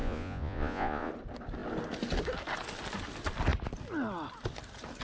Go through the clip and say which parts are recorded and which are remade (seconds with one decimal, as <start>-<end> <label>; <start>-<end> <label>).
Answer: 0.0-1.1 remade; 1.1-5.0 recorded